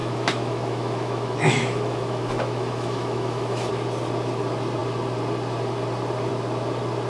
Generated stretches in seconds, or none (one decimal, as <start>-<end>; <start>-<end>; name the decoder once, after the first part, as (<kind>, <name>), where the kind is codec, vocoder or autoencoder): 0.0-3.7 (autoencoder, DAC-VAE)